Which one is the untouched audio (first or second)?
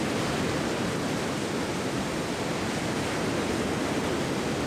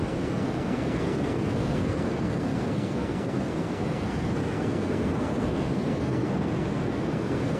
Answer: first